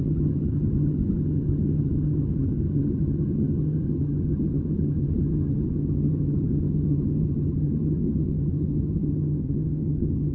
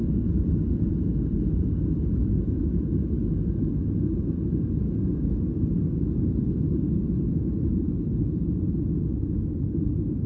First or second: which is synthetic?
first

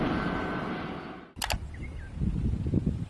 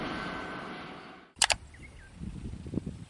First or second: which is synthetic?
second